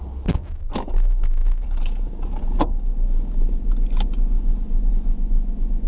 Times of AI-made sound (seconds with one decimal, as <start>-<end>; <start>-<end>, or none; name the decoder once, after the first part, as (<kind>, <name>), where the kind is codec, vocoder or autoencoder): none